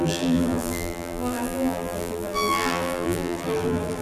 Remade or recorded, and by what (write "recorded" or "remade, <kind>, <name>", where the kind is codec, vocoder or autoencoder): remade, vocoder, BigVGAN v2